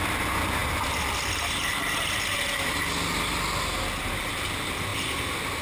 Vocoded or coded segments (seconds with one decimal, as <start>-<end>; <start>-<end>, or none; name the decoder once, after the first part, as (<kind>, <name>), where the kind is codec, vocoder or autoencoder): none